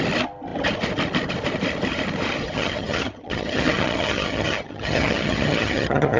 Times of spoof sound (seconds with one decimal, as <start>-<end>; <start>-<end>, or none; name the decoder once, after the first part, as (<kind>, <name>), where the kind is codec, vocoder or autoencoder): 2.4-6.2 (vocoder, HiFi-GAN)